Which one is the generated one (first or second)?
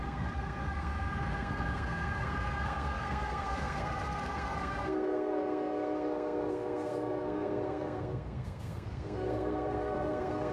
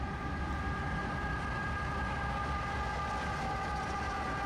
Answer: first